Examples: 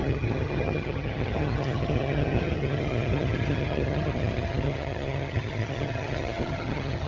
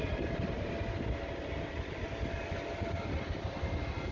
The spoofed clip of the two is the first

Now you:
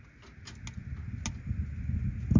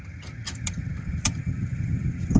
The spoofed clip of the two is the second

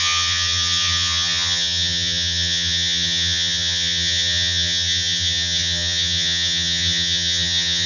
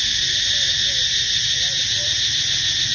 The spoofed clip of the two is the first